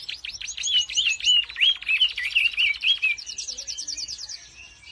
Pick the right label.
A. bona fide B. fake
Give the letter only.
A